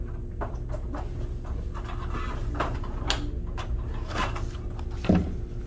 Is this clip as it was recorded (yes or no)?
yes